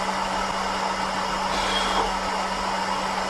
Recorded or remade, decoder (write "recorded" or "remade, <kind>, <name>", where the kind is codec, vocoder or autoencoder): recorded